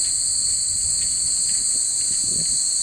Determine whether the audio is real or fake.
real